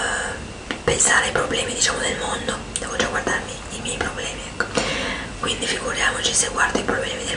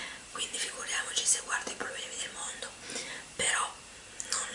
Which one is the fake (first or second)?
second